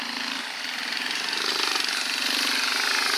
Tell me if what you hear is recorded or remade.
recorded